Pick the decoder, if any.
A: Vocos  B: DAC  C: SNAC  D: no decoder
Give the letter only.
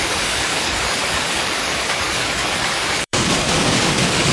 B